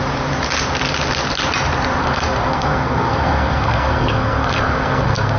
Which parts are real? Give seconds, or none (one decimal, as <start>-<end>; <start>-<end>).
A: 0.0-2.0